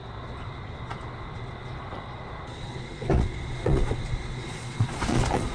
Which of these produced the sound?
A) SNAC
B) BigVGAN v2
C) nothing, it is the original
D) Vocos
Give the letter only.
D